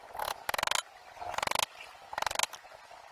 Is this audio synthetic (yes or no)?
no